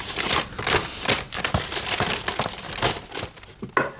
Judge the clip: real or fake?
real